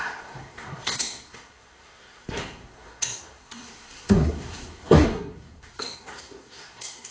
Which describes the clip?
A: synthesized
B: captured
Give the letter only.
A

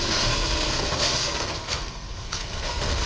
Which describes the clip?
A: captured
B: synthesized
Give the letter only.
B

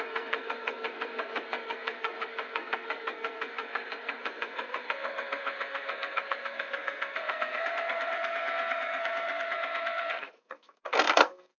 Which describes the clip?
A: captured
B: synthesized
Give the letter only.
B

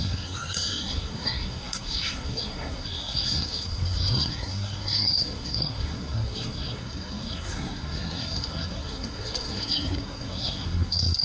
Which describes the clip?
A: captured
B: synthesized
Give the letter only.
B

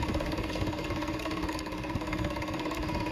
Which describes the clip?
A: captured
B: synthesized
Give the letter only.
B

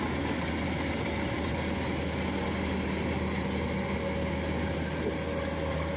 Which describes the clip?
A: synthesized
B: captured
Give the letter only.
B